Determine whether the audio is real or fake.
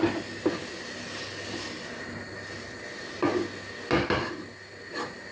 real